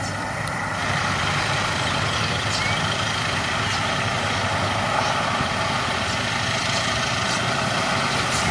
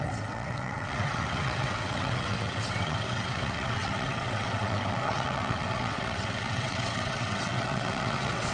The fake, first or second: second